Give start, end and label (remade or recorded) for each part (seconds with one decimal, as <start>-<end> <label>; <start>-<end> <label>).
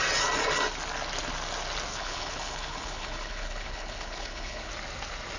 0.0-1.9 recorded; 1.9-4.7 remade; 4.7-5.4 recorded